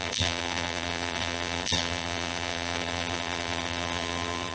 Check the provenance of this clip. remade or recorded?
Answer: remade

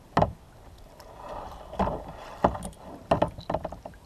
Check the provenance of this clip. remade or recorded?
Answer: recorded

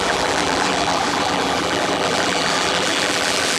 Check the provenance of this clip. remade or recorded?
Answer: remade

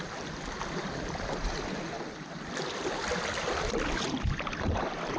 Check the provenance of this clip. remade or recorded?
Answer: remade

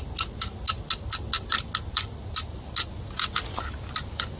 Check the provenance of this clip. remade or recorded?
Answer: recorded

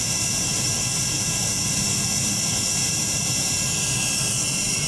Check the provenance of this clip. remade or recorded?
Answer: remade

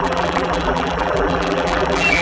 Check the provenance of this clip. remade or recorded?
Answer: remade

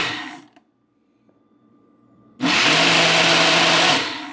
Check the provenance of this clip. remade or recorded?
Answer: remade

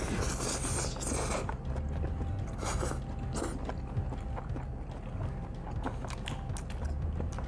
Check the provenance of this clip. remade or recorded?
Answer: recorded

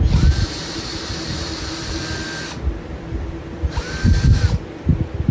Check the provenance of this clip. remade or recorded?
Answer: remade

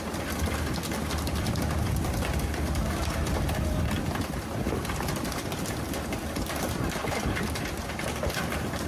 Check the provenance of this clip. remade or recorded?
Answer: remade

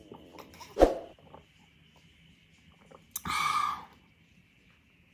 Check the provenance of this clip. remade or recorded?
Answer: recorded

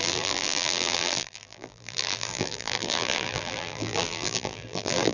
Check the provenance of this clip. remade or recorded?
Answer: remade